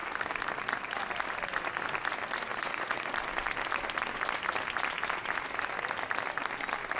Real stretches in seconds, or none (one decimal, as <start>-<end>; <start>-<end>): 0.0-2.5; 3.1-7.0

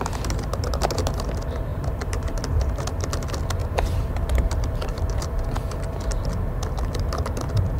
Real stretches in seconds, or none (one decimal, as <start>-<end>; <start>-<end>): 0.0-1.7; 2.4-3.6; 4.6-7.8

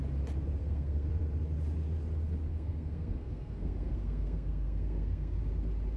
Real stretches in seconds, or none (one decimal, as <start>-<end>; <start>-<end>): 0.0-0.6; 1.1-2.5; 5.4-6.0